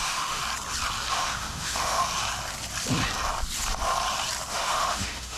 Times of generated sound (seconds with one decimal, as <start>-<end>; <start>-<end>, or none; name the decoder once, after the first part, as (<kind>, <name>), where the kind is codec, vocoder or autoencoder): 0.0-0.4 (autoencoder, DAC-VAE); 1.1-2.0; 4.5-5.4